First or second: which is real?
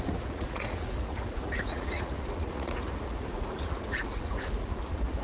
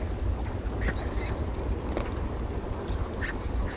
second